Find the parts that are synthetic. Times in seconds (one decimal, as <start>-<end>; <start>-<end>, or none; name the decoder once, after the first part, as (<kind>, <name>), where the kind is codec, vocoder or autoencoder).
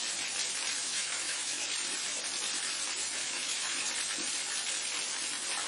0.8-1.7 (autoencoder, DAC-VAE); 3.2-3.9